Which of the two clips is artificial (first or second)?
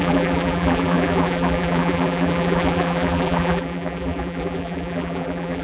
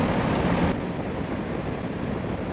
first